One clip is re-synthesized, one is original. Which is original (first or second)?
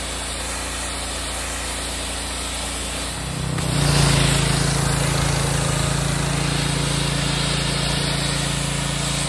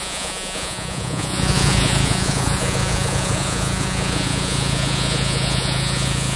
first